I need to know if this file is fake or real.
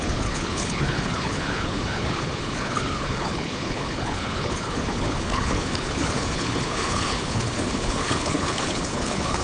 fake